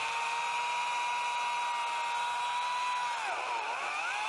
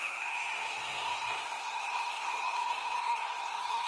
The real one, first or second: first